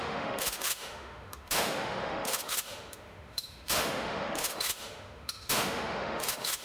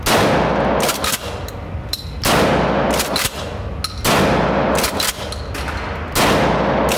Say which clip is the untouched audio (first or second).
second